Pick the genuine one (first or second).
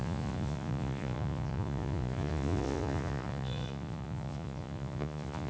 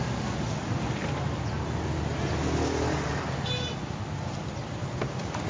second